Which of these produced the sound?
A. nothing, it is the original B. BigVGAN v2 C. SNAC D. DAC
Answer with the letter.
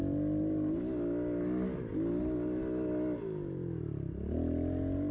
A